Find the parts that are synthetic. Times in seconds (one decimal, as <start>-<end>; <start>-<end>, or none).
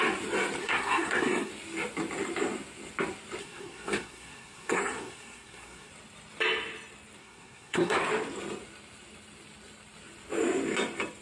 0.6-1.5; 3.4-5.9; 7.2-8.0